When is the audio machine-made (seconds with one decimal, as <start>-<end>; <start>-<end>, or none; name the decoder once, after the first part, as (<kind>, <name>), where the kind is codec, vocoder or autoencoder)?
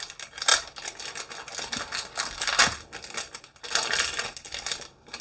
none